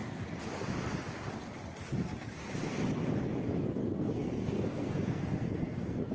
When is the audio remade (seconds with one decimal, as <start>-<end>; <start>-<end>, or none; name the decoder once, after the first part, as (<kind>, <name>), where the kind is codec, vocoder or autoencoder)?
3.8-6.1 (codec, SNAC)